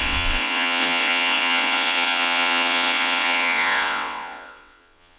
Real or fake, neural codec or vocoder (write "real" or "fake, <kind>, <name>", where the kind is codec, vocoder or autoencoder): fake, vocoder, WaveNeXt